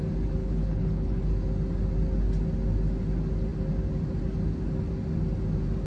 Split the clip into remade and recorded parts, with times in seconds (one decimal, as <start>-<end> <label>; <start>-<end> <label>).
0.0-0.4 recorded; 0.4-1.2 remade; 1.2-5.9 recorded